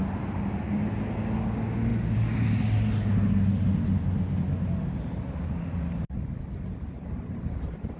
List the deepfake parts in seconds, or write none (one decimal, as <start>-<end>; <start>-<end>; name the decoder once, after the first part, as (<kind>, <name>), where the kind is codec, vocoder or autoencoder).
none